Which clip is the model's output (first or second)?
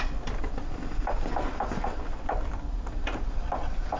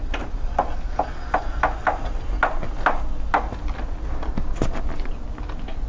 first